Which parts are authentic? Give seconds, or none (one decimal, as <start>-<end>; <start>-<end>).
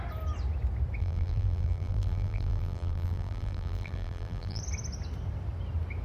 0.0-1.0; 4.6-6.0